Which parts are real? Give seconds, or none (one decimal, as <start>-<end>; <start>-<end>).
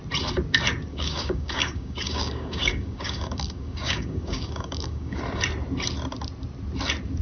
0.0-0.9; 5.2-7.2